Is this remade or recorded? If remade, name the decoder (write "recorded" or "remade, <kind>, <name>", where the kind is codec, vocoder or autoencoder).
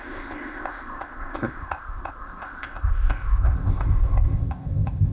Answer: remade, codec, ZipCodec